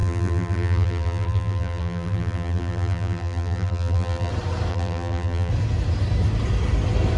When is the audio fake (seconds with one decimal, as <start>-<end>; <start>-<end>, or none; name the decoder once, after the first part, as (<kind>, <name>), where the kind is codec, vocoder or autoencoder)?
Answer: 0.0-4.3 (vocoder, BigVGAN v2); 4.7-5.5